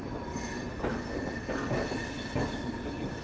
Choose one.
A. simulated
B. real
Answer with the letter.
B